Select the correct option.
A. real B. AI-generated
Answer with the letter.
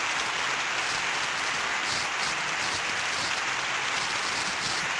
A